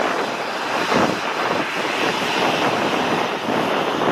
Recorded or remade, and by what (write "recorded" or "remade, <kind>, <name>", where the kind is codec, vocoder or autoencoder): recorded